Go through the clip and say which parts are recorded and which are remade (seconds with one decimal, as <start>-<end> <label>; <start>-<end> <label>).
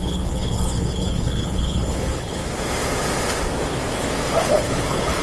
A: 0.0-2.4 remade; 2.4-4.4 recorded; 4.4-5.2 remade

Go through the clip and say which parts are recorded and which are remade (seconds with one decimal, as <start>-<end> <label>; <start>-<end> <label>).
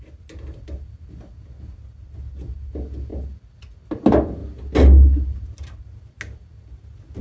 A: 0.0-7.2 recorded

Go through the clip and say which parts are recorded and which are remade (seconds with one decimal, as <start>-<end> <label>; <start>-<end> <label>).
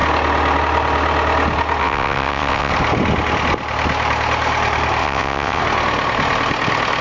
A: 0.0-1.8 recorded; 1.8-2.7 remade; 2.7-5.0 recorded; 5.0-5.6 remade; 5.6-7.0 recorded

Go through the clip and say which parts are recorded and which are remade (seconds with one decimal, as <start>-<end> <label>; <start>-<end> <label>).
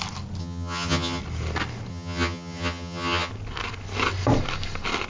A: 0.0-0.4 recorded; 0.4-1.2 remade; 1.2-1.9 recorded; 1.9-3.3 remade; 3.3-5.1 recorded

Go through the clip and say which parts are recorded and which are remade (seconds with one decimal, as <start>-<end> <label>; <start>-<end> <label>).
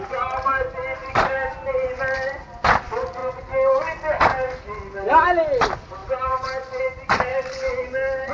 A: 0.0-6.0 recorded; 6.0-6.8 remade; 6.8-7.3 recorded; 7.3-7.8 remade; 7.8-8.3 recorded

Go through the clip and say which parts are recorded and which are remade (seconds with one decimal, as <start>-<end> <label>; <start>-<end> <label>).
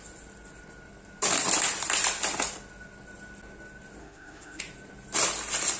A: 0.0-4.0 recorded; 4.0-4.6 remade; 4.6-5.8 recorded